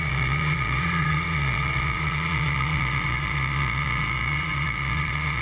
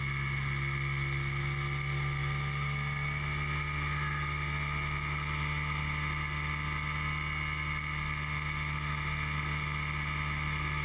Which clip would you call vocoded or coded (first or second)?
first